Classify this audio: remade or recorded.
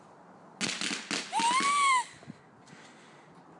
recorded